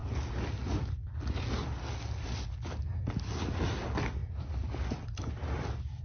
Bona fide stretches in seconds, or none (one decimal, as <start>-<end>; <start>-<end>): 0.0-6.0